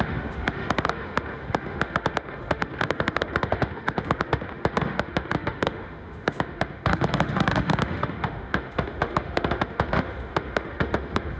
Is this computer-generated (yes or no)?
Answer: yes